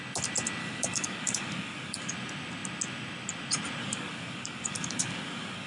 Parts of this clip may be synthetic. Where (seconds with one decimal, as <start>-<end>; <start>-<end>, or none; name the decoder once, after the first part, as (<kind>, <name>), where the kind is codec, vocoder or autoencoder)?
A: 0.6-2.1 (codec, DAC); 3.8-5.7